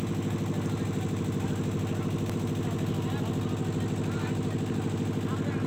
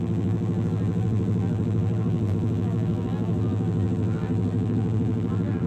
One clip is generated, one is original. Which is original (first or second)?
first